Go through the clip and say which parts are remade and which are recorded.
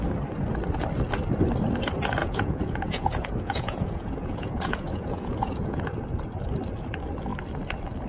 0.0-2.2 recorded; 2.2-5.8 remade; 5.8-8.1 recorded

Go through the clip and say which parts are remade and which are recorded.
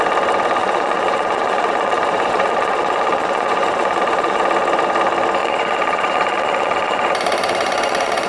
0.0-0.6 recorded; 0.6-4.4 remade; 4.4-5.4 recorded; 5.4-8.3 remade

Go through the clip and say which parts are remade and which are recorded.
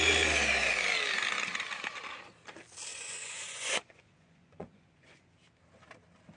0.0-2.9 recorded; 2.9-5.3 remade; 5.3-6.4 recorded